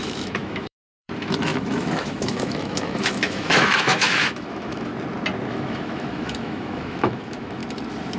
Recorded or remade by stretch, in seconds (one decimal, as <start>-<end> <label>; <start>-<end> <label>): 0.0-4.9 remade; 4.9-5.5 recorded; 5.5-7.6 remade; 7.6-8.2 recorded